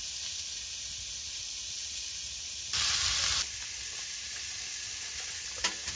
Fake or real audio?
real